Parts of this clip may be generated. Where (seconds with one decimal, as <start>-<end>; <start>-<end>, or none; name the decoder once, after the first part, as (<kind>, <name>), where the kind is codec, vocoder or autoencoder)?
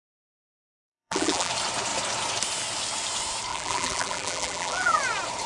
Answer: 0.7-1.5 (vocoder, BigVGAN v2); 3.5-5.0